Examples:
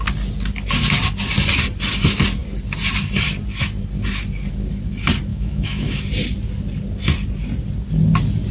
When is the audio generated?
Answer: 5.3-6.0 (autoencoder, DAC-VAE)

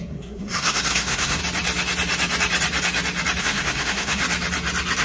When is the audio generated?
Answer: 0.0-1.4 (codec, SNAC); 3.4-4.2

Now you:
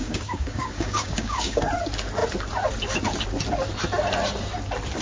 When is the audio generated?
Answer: 0.0-1.6 (codec, DAC)

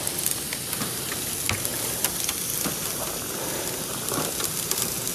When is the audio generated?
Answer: none

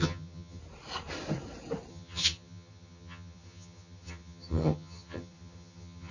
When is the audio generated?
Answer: 0.0-0.6 (vocoder, HiFi-GAN); 1.9-6.1

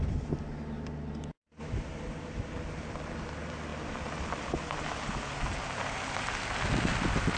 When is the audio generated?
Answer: none